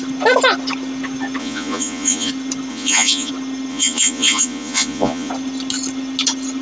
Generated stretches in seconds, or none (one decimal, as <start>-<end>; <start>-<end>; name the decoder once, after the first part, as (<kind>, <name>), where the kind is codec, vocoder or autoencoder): 1.4-2.3 (vocoder, Vocos); 2.7-3.3; 3.7-5.3